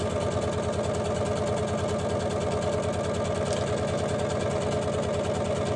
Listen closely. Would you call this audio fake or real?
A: real